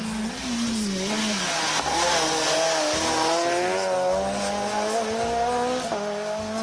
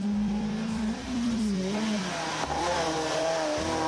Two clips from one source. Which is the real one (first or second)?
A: first